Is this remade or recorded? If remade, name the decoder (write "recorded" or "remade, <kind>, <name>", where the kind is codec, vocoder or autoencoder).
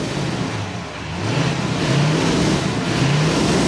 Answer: recorded